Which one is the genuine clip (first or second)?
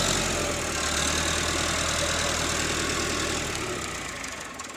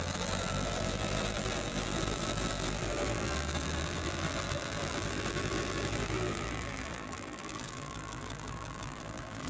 first